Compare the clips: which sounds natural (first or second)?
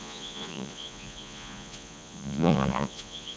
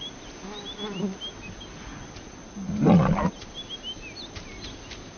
second